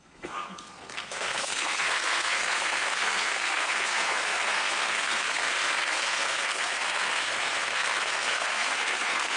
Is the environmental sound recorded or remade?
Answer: remade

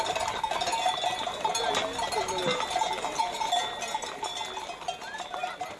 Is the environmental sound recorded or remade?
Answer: recorded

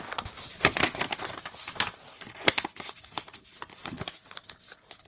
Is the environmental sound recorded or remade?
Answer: recorded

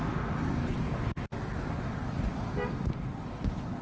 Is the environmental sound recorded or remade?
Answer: recorded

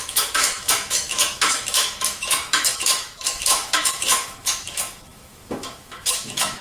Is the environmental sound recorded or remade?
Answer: remade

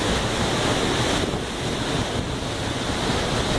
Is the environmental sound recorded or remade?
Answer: recorded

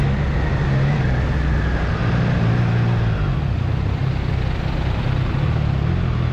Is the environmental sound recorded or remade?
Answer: recorded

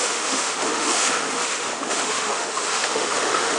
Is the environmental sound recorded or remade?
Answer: remade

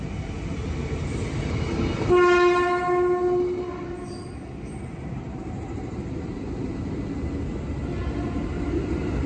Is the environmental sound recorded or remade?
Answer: recorded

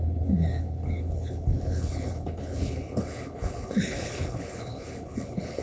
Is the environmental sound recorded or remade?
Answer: remade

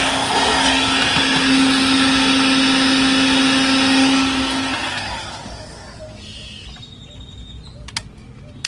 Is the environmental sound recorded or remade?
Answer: recorded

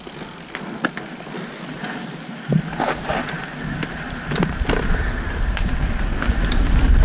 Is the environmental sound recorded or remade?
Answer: recorded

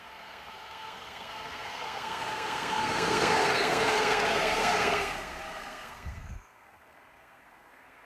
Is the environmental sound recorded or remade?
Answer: remade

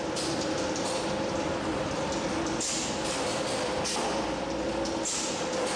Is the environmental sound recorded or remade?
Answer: recorded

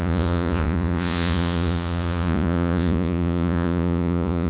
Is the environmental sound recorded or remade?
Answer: remade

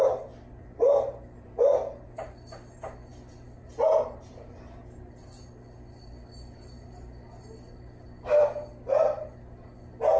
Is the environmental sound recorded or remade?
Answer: recorded